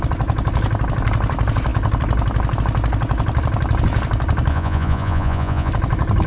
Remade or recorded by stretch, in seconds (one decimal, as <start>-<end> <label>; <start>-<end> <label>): 0.0-4.5 recorded; 4.5-5.7 remade; 5.7-6.3 recorded